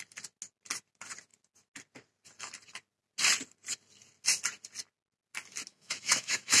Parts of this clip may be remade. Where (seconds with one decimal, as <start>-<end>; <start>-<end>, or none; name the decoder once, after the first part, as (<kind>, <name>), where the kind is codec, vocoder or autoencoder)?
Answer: 5.7-6.6 (autoencoder, DAC-VAE)